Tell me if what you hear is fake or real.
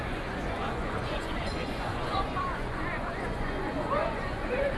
fake